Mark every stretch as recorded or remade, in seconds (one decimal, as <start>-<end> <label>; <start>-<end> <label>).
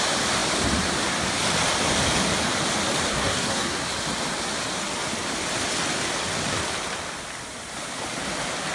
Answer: 0.0-3.1 recorded; 3.1-3.9 remade; 3.9-8.7 recorded